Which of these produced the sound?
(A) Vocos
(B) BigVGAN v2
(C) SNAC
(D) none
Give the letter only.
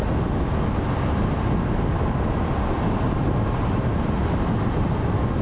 D